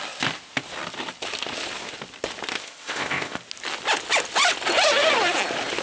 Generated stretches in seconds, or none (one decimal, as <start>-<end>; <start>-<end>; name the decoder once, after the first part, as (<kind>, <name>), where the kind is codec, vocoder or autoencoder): 2.6-3.4 (codec, ZipCodec)